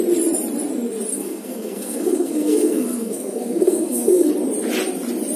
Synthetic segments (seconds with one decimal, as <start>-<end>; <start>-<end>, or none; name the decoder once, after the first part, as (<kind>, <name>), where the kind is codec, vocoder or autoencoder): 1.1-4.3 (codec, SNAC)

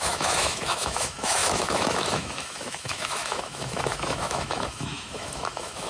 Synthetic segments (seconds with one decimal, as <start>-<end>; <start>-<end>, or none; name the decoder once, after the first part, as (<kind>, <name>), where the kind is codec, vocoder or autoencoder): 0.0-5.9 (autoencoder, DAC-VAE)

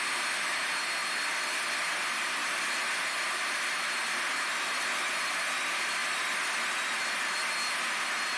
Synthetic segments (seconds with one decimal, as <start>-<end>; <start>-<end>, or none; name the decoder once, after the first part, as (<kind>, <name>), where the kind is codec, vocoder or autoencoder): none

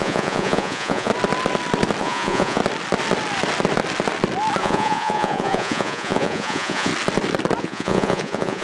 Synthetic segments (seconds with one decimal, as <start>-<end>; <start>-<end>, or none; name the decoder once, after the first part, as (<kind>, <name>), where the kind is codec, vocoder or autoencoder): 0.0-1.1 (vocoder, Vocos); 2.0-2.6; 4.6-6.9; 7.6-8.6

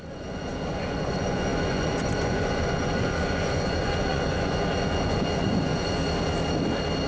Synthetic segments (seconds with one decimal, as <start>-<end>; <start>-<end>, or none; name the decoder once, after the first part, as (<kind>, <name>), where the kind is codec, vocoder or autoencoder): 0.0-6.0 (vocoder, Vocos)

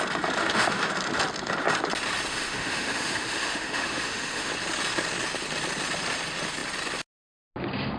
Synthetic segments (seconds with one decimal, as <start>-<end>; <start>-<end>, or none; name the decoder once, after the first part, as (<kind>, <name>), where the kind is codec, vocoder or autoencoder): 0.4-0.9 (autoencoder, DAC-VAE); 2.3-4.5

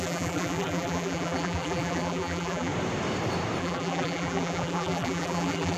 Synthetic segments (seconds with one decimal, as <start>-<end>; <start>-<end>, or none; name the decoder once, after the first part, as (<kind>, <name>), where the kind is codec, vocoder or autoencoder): 0.0-2.7 (vocoder, BigVGAN v2); 3.6-5.8